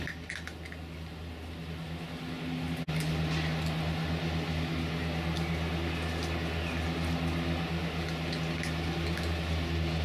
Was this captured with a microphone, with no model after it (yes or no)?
yes